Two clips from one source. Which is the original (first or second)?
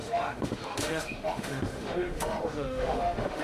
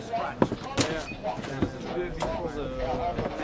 second